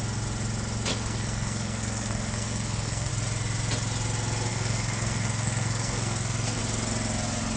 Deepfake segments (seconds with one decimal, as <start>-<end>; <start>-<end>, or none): 0.9-3.1; 4.5-6.6